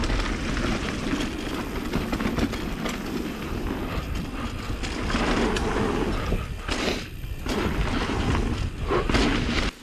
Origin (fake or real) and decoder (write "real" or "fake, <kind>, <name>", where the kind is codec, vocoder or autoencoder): real